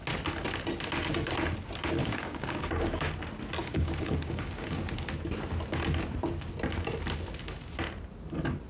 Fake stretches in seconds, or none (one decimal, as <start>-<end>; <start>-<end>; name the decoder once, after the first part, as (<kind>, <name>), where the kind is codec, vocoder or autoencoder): 2.0-3.1 (codec, DAC); 3.6-4.8